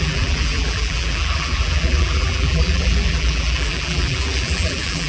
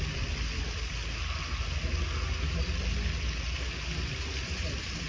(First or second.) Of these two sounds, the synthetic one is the first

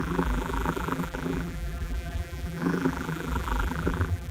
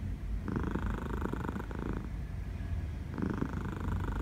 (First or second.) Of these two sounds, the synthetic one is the first